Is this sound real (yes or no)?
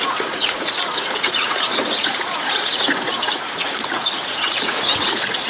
no